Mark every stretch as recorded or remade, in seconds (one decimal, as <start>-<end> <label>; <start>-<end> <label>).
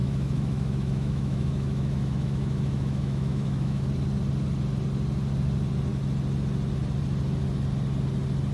0.0-3.9 remade; 3.9-8.5 recorded